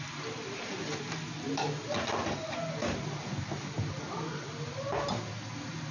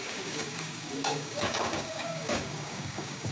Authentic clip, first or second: first